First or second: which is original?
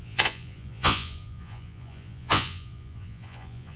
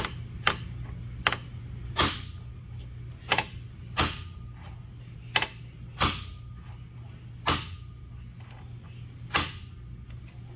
second